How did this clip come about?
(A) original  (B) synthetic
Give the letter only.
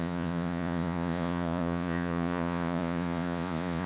B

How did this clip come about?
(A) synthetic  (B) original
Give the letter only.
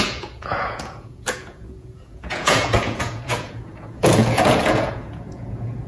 A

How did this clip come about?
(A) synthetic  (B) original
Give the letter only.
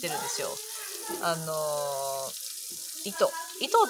B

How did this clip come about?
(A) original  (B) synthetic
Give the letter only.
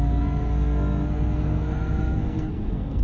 B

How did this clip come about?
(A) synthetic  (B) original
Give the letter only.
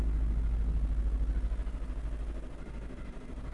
B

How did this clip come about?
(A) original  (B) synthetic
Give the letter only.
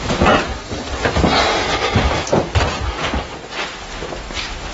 A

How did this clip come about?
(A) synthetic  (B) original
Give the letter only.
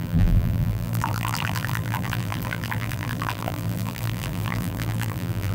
A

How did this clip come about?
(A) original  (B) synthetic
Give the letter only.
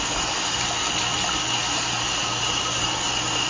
A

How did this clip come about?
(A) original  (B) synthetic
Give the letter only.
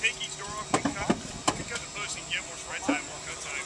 A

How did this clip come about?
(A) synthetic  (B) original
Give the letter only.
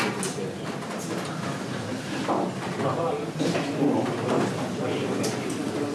B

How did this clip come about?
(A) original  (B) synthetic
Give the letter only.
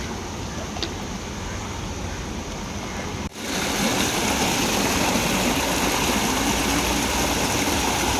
A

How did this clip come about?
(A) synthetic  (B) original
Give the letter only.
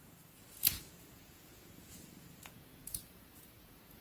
A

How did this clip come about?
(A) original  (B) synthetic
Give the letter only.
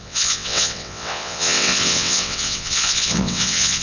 B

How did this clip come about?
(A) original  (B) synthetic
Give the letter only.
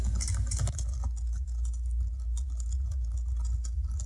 A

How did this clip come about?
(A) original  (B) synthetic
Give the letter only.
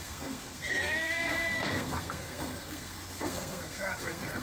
B